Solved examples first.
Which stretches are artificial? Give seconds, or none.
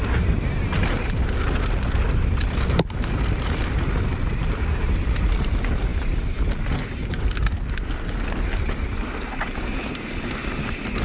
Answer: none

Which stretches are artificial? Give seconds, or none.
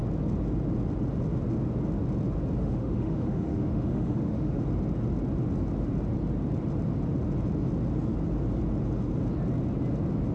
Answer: 2.6-4.6 (autoencoder, DAC-VAE)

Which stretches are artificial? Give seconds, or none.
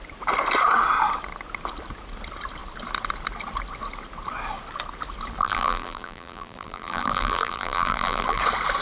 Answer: 5.4-8.4 (vocoder, BigVGAN v2)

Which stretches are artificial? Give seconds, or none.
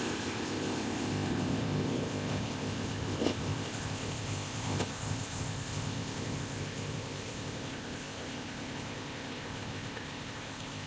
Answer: 0.0-10.9 (codec, ZipCodec)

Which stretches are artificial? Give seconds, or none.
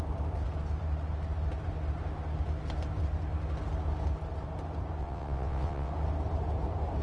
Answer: 5.0-5.9 (vocoder, WaveNeXt)